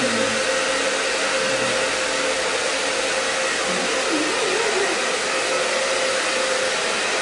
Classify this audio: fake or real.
real